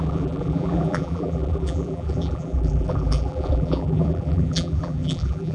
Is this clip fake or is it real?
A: fake